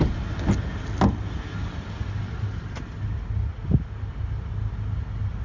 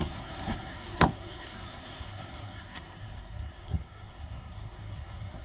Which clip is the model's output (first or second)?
second